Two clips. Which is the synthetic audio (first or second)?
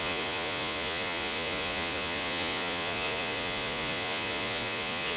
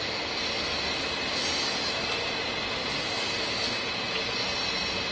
first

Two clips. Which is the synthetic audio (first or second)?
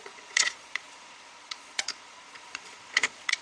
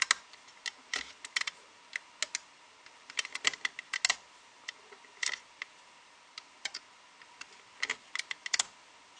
first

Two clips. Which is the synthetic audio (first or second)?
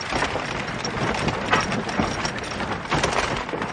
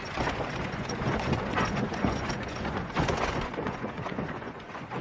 second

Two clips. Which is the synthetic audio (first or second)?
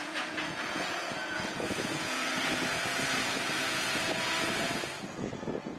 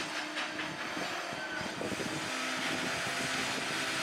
first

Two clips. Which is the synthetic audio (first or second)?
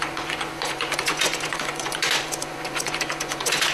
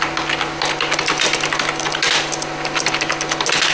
first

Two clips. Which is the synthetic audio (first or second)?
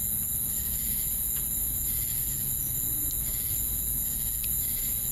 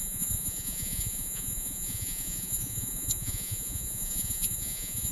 second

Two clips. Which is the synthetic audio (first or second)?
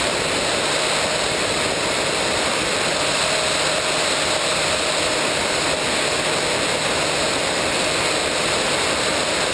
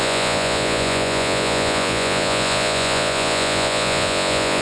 second